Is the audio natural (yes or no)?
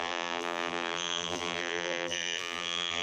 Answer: no